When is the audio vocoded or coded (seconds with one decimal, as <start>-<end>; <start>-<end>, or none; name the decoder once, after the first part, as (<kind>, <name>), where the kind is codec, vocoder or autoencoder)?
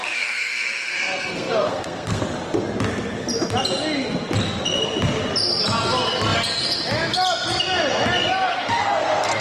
0.0-2.2 (codec, SNAC); 8.5-9.4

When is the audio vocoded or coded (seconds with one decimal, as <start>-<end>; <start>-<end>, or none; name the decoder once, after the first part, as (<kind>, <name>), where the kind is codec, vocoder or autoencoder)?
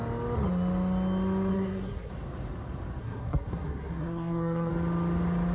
1.5-2.1 (codec, SNAC); 3.0-4.7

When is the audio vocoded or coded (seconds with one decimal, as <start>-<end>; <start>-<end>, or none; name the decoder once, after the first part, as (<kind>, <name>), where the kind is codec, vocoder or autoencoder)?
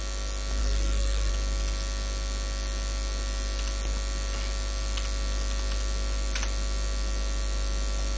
0.6-1.3 (codec, SNAC)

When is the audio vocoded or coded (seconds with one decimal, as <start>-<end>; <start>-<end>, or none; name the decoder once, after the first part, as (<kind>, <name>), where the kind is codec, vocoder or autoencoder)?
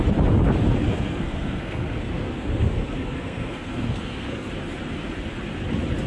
0.8-4.5 (codec, SNAC)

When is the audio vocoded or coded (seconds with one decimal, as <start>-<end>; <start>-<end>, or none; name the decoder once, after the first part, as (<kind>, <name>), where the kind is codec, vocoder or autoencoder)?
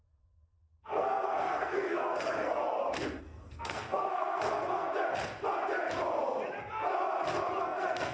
0.0-2.6 (codec, SNAC); 3.2-4.9; 7.6-8.1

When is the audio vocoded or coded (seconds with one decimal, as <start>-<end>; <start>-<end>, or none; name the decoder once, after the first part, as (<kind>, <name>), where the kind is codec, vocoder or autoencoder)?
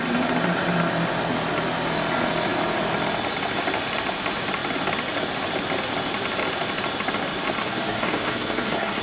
7.6-9.0 (codec, SNAC)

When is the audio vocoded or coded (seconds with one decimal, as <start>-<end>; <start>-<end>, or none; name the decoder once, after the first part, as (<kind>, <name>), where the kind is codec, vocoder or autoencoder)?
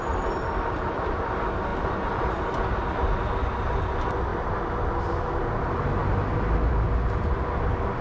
none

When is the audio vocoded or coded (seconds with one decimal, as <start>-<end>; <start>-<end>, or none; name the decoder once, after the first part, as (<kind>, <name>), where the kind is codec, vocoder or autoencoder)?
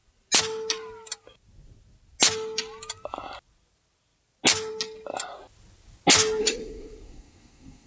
6.4-7.9 (codec, SNAC)